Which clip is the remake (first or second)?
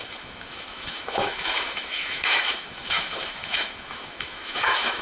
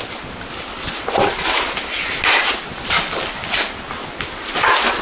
first